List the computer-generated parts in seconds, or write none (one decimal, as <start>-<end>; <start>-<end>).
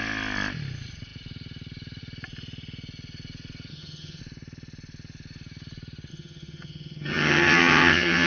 3.7-4.2; 6.1-8.3